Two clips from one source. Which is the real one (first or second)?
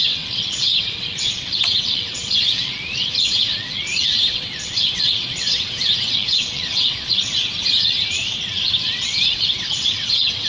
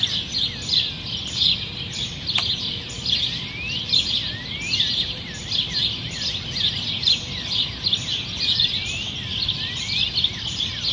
second